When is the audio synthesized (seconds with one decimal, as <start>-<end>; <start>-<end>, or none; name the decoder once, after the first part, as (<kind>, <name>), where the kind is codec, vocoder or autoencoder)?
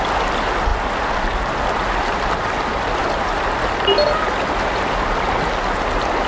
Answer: none